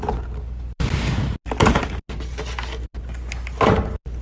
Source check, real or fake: real